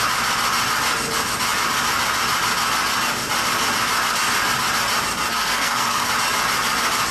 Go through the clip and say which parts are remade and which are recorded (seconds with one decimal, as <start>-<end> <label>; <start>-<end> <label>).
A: 0.0-5.3 recorded; 5.3-6.1 remade; 6.1-7.1 recorded